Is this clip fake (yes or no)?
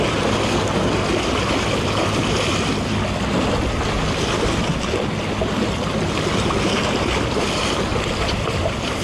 no